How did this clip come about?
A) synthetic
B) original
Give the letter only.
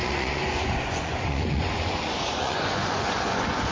A